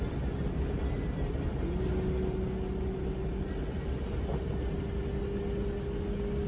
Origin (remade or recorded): recorded